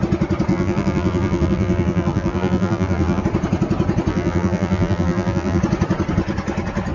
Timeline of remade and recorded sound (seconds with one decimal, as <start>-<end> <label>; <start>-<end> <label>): 0.0-0.5 recorded; 0.5-3.2 remade; 3.2-4.1 recorded; 4.1-5.6 remade; 5.6-6.9 recorded